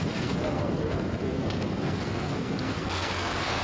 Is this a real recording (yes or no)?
no